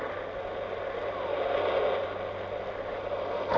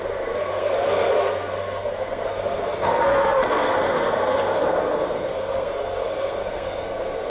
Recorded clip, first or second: first